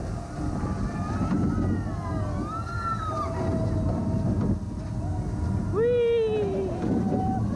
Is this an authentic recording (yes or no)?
yes